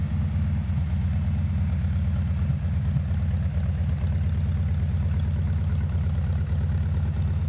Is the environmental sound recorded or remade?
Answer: recorded